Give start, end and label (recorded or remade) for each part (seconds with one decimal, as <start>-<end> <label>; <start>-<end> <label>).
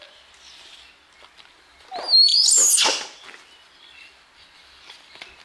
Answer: 0.0-5.4 recorded